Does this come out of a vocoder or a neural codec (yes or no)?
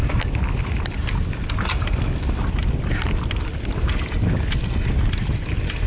no